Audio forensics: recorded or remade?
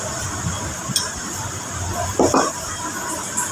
recorded